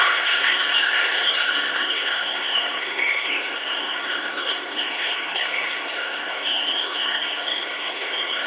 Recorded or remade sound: remade